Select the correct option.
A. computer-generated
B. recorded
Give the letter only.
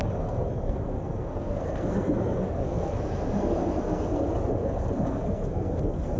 A